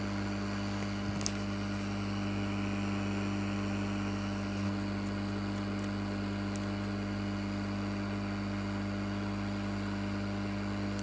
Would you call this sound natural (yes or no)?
yes